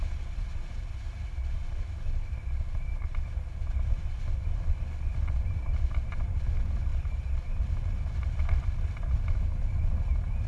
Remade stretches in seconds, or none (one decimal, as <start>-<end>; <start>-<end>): 0.5-2.0; 6.9-9.5